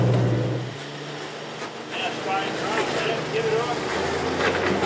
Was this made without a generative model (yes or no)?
yes